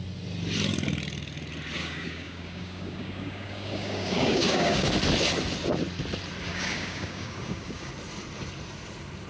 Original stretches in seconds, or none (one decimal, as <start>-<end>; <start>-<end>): 0.0-1.8; 4.9-6.5; 7.9-9.3